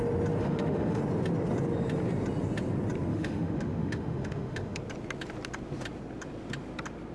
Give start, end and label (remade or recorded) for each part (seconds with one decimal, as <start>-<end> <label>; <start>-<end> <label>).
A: 0.0-0.4 recorded; 0.4-1.0 remade; 1.0-3.1 recorded; 3.1-4.8 remade; 4.8-7.1 recorded